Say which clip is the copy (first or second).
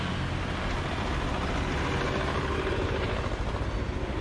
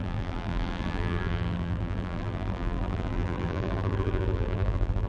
second